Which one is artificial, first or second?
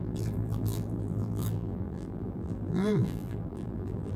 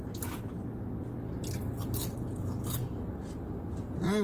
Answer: first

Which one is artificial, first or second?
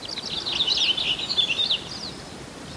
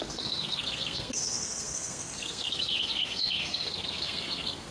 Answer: second